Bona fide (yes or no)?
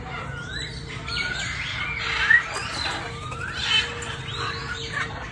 yes